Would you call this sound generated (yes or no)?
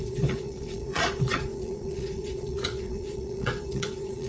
yes